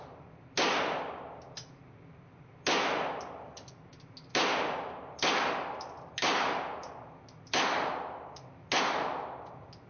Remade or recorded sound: recorded